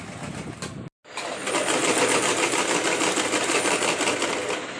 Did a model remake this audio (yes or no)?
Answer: no